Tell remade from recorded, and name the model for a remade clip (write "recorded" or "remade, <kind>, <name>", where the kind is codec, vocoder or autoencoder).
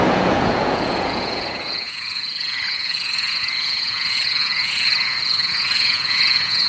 remade, vocoder, Vocos